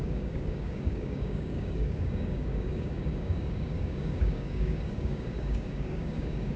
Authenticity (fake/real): fake